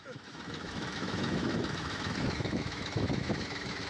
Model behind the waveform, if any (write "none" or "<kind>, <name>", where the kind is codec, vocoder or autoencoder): autoencoder, DAC-VAE